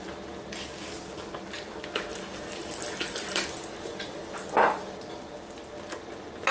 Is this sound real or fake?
real